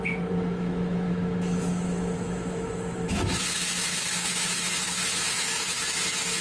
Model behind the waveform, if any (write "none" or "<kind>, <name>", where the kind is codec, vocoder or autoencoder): autoencoder, DAC-VAE